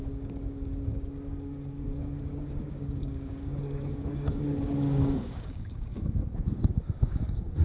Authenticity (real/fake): fake